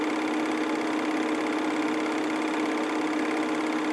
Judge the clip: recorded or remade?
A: recorded